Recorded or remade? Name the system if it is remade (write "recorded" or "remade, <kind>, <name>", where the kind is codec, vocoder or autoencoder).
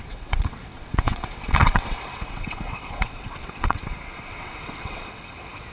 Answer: remade, vocoder, WaveNeXt